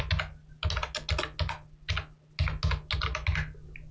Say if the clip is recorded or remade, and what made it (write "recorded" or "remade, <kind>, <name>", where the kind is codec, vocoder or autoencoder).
recorded